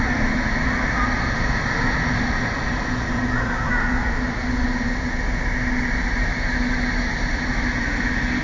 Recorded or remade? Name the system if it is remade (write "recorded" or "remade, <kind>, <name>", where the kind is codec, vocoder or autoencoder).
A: recorded